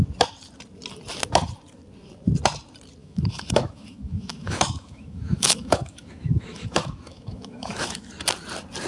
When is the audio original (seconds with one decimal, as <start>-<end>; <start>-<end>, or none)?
0.0-3.0; 8.1-8.9